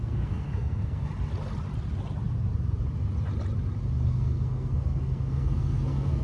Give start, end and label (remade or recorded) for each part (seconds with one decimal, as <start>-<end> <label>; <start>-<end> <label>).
0.0-1.1 remade; 1.1-4.1 recorded; 4.1-6.2 remade

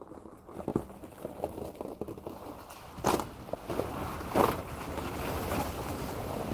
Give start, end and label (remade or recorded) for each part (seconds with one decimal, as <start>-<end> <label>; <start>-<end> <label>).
0.0-6.5 recorded

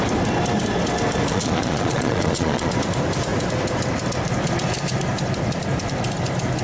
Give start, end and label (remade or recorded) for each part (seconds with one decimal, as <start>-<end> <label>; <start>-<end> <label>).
0.0-1.3 recorded; 1.3-2.7 remade; 2.7-6.6 recorded

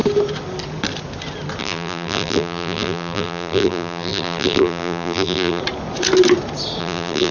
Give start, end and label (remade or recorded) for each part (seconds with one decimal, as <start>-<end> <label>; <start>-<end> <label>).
0.0-1.6 recorded; 1.6-5.6 remade; 5.6-6.8 recorded; 6.8-7.3 remade

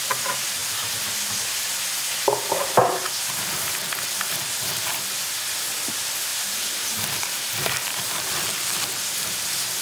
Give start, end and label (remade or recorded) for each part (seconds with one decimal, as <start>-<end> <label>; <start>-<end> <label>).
0.0-6.3 recorded; 6.3-8.4 remade; 8.4-9.8 recorded